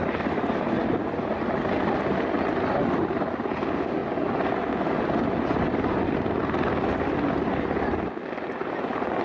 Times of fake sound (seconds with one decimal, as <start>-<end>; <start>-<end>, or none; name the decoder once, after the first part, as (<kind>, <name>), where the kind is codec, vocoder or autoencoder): none